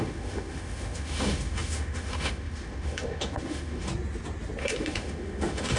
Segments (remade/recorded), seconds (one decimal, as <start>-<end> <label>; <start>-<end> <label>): 0.0-3.9 remade; 3.9-4.6 recorded; 4.6-5.8 remade